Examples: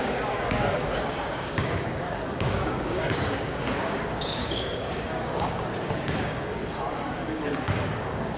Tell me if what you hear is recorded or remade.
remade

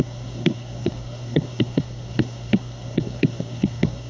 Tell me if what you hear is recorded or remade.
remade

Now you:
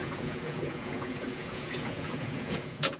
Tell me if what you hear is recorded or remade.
remade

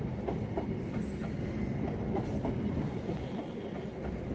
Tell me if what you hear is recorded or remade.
recorded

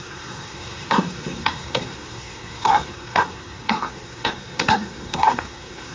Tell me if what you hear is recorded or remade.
remade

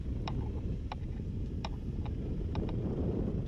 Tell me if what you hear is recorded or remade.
remade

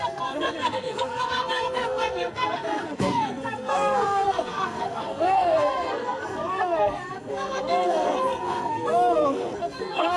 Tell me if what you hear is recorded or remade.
remade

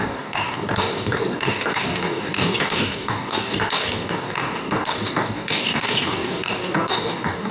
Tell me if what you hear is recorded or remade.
remade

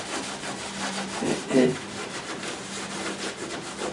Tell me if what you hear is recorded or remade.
remade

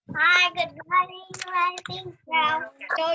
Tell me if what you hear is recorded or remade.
recorded